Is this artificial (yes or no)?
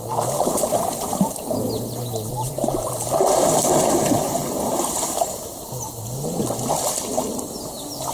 no